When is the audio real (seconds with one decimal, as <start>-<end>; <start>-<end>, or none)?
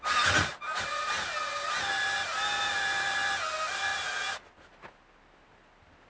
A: 0.0-6.1